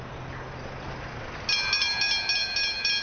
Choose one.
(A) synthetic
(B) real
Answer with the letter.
B